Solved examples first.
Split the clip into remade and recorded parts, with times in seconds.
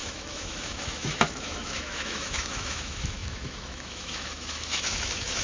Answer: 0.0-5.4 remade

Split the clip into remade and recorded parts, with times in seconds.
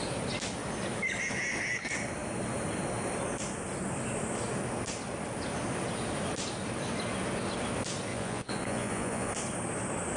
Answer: 0.0-8.1 recorded; 8.1-9.3 remade; 9.3-10.2 recorded